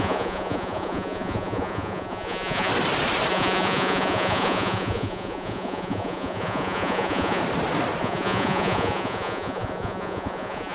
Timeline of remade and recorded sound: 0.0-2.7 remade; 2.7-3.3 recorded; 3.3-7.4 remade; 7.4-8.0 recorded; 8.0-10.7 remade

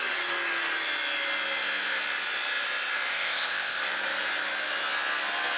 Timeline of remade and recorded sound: 0.0-3.1 recorded; 3.1-3.8 remade; 3.8-5.6 recorded

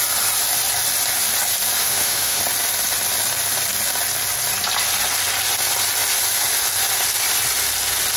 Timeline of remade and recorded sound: 0.0-1.8 recorded; 1.8-2.4 remade; 2.4-8.2 recorded

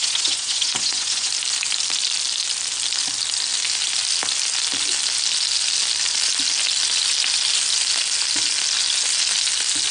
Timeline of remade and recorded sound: 0.0-1.3 remade; 1.3-9.9 recorded